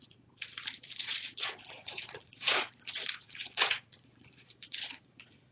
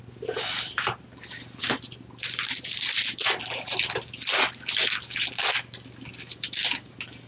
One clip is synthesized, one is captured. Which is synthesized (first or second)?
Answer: first